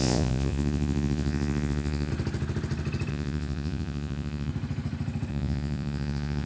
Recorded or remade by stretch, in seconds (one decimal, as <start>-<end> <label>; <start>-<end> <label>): 0.0-2.1 remade; 2.1-3.1 recorded; 3.1-4.5 remade; 4.5-5.3 recorded; 5.3-6.5 remade